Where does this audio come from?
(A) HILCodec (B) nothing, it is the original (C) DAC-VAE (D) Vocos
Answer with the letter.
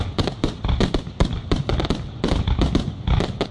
B